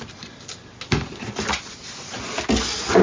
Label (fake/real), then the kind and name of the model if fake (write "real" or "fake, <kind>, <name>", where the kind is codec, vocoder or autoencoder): real